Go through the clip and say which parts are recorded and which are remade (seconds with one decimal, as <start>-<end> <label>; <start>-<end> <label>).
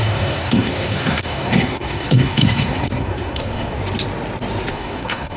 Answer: 0.0-3.8 remade; 3.8-4.7 recorded; 4.7-5.4 remade